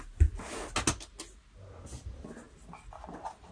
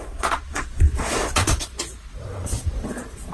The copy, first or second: second